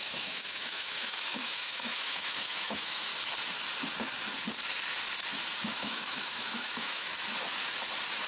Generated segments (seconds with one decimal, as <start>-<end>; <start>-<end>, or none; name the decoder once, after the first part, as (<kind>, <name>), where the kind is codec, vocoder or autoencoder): 0.0-3.1 (autoencoder, DAC-VAE); 5.6-7.1